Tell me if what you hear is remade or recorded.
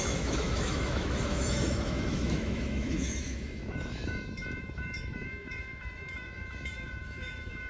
remade